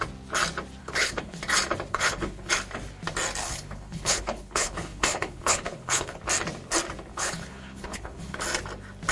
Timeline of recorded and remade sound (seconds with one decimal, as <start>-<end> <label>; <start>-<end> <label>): 0.0-0.8 recorded; 0.8-1.4 remade; 1.4-1.9 recorded; 1.9-2.5 remade; 2.5-3.4 recorded; 3.4-6.2 remade; 6.2-7.1 recorded; 7.1-8.4 remade; 8.4-9.1 recorded